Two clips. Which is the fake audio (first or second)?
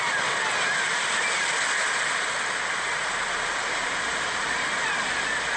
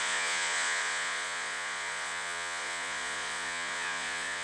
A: second